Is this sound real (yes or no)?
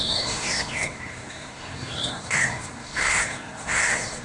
no